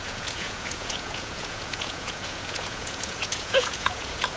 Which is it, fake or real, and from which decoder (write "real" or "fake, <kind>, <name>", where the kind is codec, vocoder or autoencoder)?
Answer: fake, vocoder, Vocos